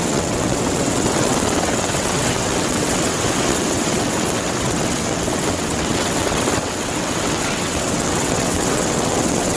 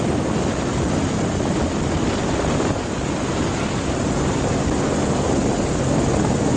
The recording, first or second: second